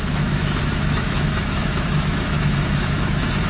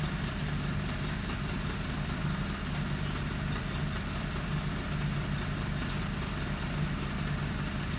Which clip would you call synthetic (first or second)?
first